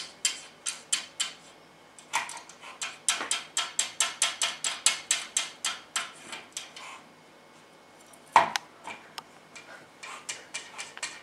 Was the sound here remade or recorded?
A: recorded